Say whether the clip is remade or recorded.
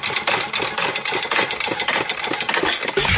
recorded